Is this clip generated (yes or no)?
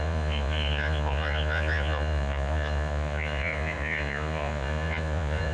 yes